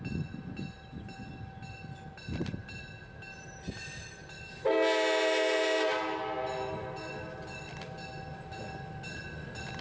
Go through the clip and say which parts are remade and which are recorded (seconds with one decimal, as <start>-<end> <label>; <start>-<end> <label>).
0.0-9.8 recorded